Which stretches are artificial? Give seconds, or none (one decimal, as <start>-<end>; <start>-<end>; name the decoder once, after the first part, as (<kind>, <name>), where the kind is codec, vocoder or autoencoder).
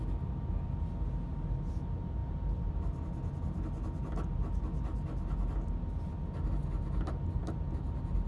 none